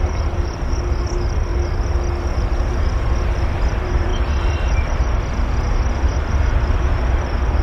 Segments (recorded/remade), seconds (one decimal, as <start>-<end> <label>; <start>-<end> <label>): 0.0-1.5 remade; 1.5-2.8 recorded; 2.8-7.6 remade